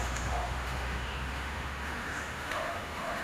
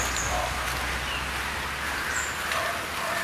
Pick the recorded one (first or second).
second